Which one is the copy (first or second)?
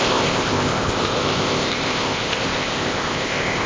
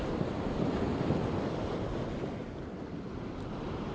first